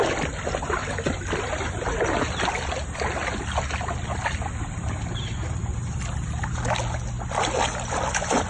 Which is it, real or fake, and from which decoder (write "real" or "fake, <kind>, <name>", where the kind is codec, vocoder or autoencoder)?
real